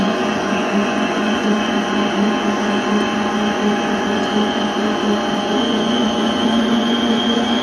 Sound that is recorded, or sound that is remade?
remade